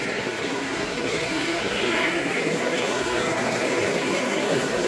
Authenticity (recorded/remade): remade